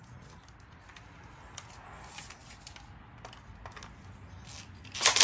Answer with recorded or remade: recorded